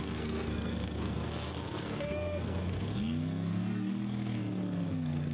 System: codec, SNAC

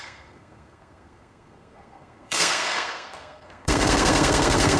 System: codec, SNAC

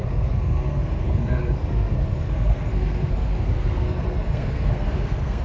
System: codec, SNAC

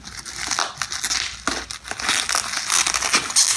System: none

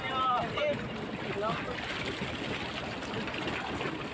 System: none